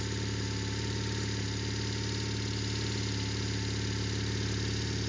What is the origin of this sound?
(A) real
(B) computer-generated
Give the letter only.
A